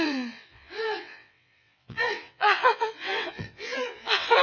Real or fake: fake